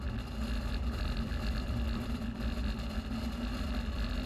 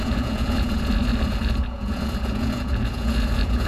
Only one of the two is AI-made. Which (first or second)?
second